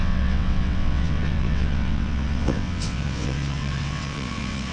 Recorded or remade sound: remade